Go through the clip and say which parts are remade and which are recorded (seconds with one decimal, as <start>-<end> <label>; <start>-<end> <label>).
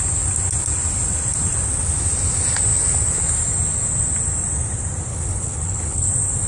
0.0-5.1 recorded; 5.1-6.1 remade; 6.1-6.5 recorded